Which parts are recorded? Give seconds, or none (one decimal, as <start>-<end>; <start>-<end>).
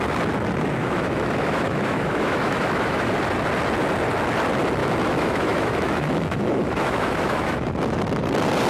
0.0-0.8; 3.1-4.8; 7.7-8.7